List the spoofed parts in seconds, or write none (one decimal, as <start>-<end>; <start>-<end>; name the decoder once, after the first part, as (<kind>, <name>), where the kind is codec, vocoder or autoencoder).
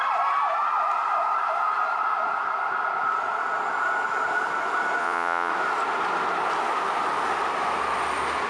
5.0-5.5 (vocoder, Vocos)